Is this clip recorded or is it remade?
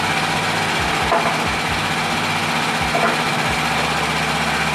recorded